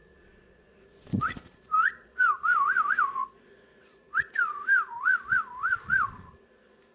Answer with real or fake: fake